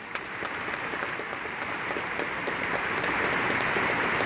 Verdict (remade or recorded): remade